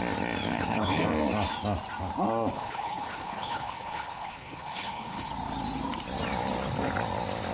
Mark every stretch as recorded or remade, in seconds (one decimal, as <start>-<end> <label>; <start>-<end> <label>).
0.0-0.5 recorded; 0.5-1.0 remade; 1.0-2.5 recorded; 2.5-5.3 remade; 5.3-7.5 recorded